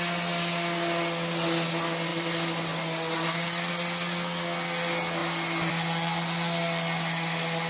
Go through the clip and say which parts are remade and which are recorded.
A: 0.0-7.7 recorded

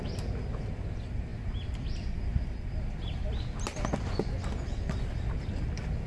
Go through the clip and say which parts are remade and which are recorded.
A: 0.0-6.1 recorded